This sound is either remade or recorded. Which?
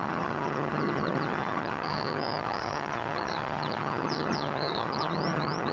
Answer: remade